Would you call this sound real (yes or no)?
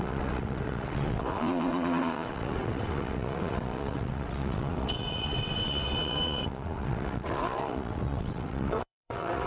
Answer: no